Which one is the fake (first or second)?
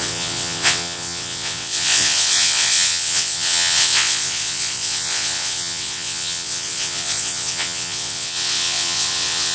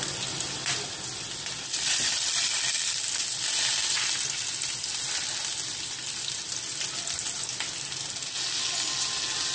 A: first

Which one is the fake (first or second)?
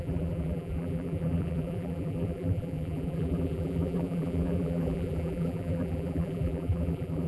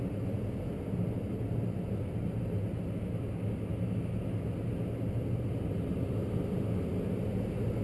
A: first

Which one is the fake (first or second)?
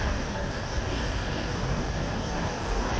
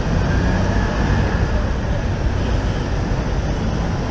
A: first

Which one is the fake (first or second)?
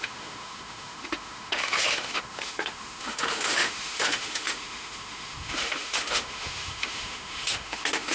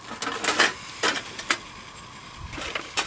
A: first